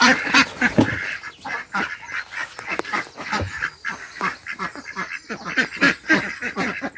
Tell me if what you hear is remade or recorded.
recorded